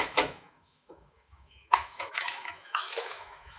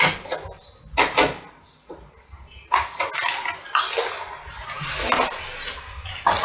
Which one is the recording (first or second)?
second